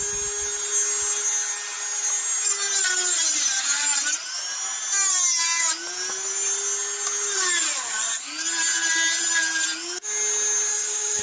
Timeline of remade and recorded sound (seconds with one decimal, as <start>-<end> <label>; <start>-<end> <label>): 0.0-10.7 recorded; 10.7-11.2 remade